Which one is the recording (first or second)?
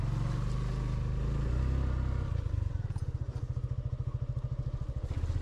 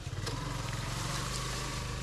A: first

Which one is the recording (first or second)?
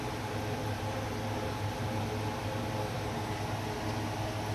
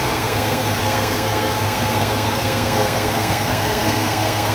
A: first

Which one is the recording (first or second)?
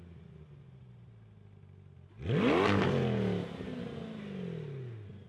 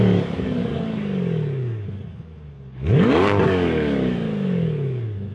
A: first